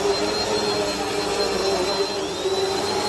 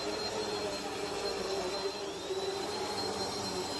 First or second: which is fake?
second